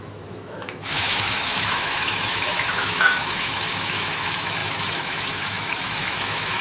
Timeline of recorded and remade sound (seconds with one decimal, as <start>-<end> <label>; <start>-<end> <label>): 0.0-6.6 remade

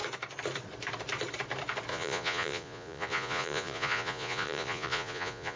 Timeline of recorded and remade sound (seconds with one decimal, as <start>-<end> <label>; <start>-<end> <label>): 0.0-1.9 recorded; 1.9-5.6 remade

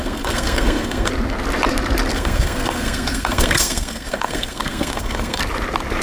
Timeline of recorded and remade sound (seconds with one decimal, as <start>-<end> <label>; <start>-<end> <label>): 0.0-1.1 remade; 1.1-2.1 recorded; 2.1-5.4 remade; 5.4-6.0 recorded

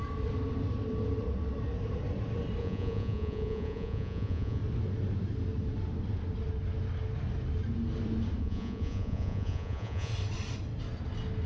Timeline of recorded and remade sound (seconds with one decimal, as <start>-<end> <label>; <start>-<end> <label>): 0.0-2.6 recorded; 2.6-4.6 remade; 4.6-8.4 recorded; 8.4-10.1 remade; 10.1-11.5 recorded

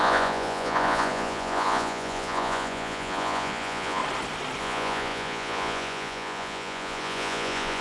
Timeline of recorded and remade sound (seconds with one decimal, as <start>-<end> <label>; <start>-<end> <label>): 0.0-4.0 remade; 4.0-4.6 recorded; 4.6-7.8 remade

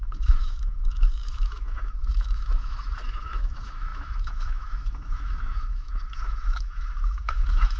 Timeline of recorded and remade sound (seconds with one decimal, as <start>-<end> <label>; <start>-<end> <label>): 0.0-7.8 remade

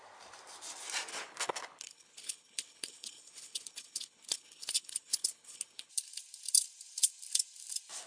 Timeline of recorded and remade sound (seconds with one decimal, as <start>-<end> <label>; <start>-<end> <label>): 0.0-1.1 recorded; 1.1-5.9 remade; 5.9-8.1 recorded